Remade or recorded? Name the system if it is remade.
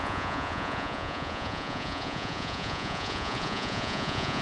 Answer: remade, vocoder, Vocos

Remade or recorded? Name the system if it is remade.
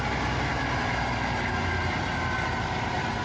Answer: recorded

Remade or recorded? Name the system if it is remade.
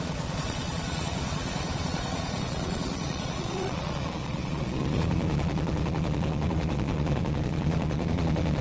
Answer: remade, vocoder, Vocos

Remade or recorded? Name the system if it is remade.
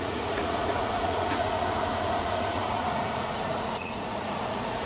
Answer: remade, vocoder, Vocos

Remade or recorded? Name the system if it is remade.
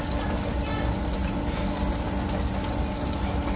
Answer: recorded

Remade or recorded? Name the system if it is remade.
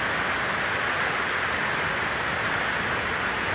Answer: recorded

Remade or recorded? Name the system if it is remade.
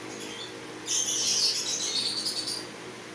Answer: recorded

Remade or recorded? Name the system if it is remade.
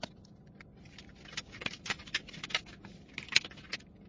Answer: recorded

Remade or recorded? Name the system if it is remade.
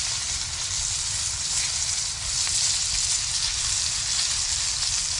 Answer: recorded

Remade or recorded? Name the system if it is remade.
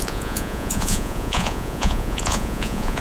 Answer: remade, vocoder, Vocos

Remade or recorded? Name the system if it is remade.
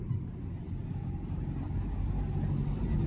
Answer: recorded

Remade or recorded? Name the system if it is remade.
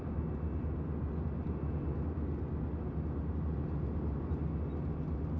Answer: recorded